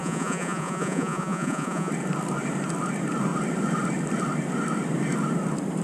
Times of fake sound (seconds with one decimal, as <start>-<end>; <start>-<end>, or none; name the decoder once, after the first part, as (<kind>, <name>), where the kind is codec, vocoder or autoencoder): 0.0-1.9 (vocoder, Vocos)